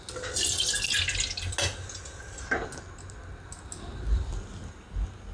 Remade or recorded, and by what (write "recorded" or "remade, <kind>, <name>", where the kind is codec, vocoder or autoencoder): recorded